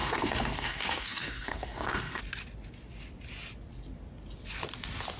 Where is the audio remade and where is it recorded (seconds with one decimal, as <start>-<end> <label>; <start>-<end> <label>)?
0.0-2.2 remade; 2.2-5.2 recorded